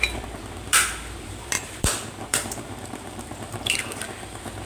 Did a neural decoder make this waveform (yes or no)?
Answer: yes